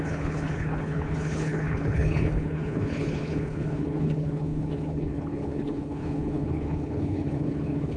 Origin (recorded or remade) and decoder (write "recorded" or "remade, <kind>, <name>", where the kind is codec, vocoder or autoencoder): remade, codec, HILCodec